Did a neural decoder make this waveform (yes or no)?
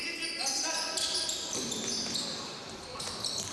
no